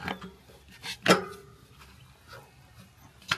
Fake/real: real